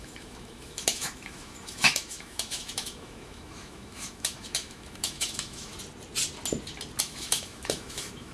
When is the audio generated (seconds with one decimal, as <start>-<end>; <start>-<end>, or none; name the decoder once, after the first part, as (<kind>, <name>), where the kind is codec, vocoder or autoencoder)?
0.0-5.7 (autoencoder, DAC-VAE); 7.0-8.3